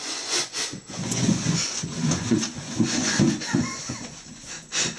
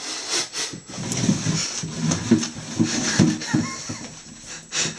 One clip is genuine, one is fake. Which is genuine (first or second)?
second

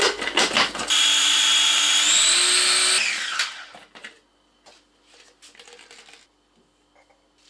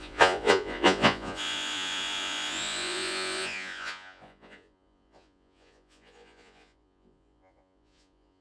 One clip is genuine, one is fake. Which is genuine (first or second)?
first